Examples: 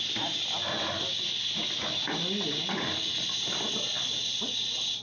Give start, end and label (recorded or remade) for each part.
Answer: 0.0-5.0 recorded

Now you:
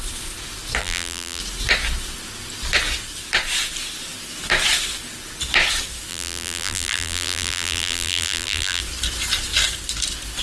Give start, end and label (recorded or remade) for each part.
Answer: 0.0-0.8 recorded; 0.8-1.4 remade; 1.4-6.1 recorded; 6.1-8.8 remade; 8.8-10.4 recorded

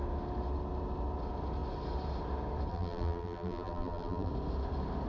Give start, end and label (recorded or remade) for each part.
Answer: 0.0-2.7 recorded; 2.7-4.3 remade; 4.3-5.1 recorded

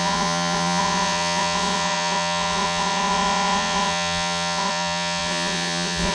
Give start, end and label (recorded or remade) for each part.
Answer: 0.0-6.1 remade

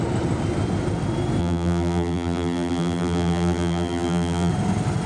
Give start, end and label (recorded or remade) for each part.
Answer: 0.0-1.4 recorded; 1.4-4.5 remade; 4.5-5.1 recorded

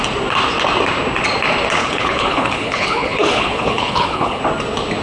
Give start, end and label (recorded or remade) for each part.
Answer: 0.0-1.8 recorded; 1.8-4.4 remade; 4.4-5.0 recorded

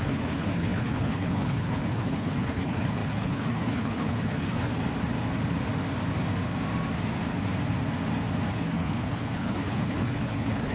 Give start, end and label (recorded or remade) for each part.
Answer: 0.0-4.7 remade; 4.7-8.5 recorded; 8.5-10.7 remade